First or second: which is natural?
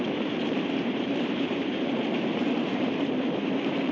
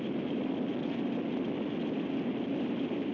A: second